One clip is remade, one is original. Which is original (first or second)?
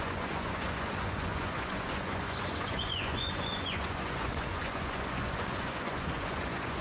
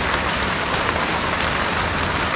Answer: second